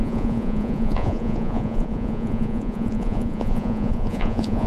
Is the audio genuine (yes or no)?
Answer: no